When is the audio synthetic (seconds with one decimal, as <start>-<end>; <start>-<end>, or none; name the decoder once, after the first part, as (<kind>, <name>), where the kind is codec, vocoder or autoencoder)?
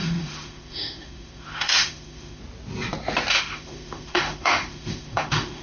0.0-2.4 (autoencoder, DAC-VAE); 3.3-5.6